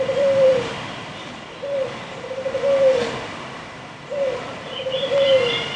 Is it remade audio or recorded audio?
remade